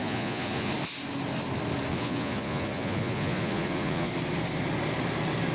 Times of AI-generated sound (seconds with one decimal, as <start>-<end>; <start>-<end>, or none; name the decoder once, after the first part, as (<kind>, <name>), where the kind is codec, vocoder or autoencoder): 0.0-0.7 (vocoder, Vocos); 1.9-4.1